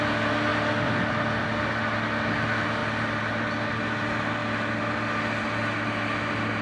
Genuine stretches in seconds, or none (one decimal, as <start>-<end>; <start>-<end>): 0.0-2.8; 3.4-6.6